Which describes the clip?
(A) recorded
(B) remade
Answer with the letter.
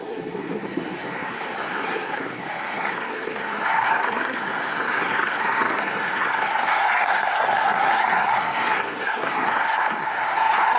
B